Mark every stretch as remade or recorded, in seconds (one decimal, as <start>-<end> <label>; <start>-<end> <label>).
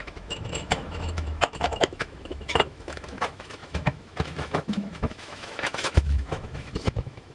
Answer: 0.0-7.3 remade